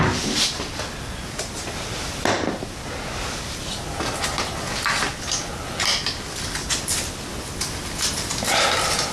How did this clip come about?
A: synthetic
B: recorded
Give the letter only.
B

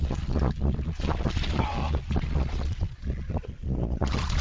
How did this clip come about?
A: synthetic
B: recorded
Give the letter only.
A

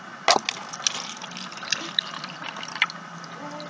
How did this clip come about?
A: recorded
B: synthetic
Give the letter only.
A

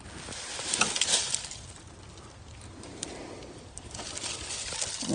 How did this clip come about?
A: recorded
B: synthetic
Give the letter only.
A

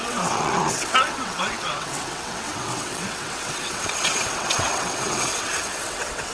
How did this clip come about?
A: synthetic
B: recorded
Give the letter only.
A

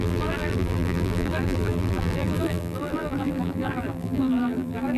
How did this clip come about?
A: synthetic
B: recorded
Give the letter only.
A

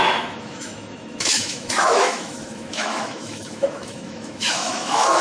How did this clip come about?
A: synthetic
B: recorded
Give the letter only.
A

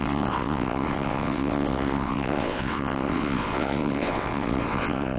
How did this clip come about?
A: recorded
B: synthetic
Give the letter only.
B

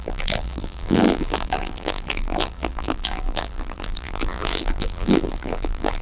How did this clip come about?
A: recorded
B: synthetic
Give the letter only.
B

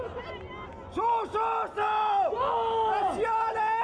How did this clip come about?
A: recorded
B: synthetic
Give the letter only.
A